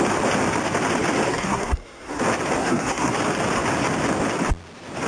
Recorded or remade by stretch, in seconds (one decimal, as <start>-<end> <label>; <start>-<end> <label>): 0.0-1.3 recorded; 1.3-2.2 remade; 2.2-2.6 recorded; 2.6-3.1 remade; 3.1-5.1 recorded

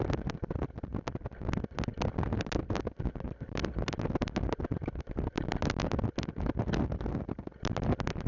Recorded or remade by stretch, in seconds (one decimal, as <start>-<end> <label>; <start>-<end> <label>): 0.0-8.3 recorded

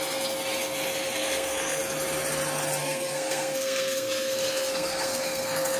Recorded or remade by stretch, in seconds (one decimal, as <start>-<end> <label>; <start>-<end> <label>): 0.0-1.2 recorded; 1.2-1.8 remade; 1.8-2.8 recorded; 2.8-5.8 remade

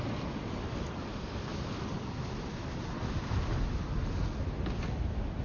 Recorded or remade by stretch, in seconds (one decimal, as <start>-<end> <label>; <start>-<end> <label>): 0.0-5.4 recorded

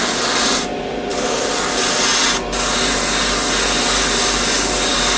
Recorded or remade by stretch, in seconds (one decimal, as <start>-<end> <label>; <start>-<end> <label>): 0.0-5.2 recorded

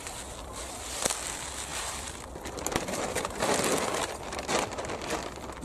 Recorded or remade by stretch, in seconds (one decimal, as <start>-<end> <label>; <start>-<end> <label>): 0.0-5.6 recorded

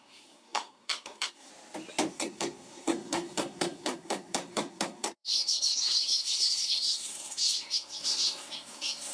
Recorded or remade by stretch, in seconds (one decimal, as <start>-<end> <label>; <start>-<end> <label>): 0.0-1.5 remade; 1.5-2.1 recorded; 2.1-9.1 remade

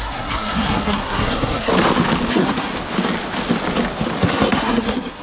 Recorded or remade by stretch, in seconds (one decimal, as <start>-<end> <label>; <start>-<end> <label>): 0.0-1.7 remade; 1.7-2.3 recorded; 2.3-2.7 remade; 2.7-4.2 recorded; 4.2-5.2 remade